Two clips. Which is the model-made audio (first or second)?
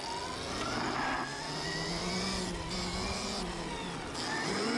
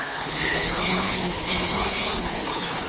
second